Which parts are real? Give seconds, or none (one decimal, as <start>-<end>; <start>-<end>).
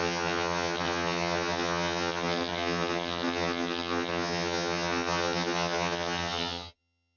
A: none